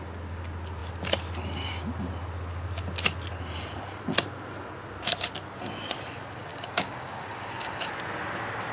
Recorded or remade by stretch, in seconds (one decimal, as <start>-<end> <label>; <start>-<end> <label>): 0.0-6.5 recorded; 6.5-7.9 remade; 7.9-8.7 recorded